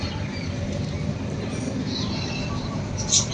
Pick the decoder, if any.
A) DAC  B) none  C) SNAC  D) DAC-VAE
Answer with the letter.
B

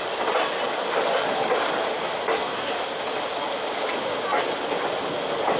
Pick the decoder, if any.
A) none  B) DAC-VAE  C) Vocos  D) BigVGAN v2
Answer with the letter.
A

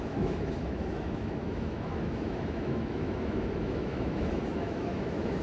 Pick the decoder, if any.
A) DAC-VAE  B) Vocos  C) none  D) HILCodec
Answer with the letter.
A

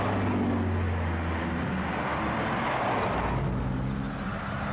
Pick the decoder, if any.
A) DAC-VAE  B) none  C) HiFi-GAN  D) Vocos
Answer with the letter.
B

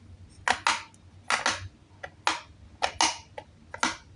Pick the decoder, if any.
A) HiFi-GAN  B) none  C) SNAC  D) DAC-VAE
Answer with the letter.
B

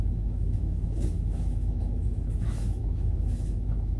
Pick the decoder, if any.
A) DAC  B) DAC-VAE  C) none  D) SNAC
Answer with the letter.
B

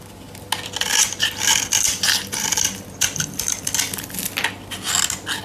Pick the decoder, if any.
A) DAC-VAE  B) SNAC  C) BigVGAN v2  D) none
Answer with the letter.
D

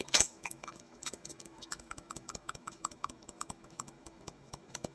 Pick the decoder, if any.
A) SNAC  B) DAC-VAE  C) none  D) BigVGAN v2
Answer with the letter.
B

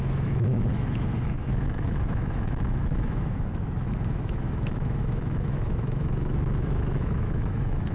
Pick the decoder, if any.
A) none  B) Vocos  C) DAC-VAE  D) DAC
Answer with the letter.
C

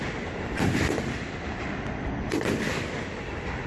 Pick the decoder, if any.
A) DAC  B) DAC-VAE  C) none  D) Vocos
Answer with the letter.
C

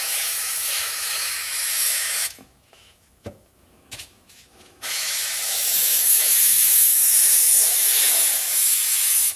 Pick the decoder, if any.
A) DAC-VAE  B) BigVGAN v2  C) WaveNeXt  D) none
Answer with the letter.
A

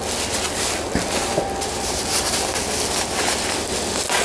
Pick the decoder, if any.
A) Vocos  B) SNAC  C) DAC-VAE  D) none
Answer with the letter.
D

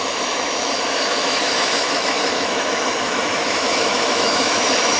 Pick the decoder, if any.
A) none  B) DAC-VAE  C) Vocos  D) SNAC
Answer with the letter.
B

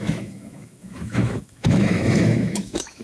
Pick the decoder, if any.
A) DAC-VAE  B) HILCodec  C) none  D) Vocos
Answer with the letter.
A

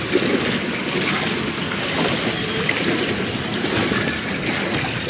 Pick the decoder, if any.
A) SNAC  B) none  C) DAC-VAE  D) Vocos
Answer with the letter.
B